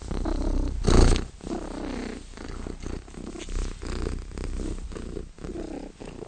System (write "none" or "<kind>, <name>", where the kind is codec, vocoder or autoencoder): none